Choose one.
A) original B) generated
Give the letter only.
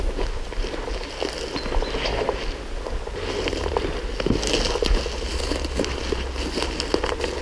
A